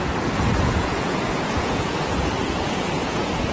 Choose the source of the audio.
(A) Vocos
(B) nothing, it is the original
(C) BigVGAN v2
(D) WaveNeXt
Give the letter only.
A